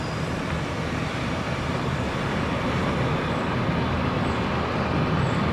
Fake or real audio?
real